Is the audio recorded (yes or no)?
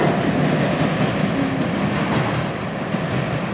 yes